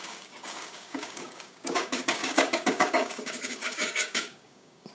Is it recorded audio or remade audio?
remade